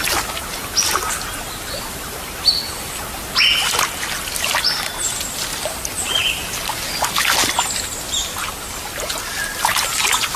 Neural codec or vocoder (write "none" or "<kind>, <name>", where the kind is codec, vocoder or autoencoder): none